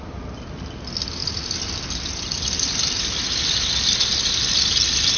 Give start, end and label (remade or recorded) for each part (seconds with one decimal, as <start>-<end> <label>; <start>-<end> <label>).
0.0-5.2 recorded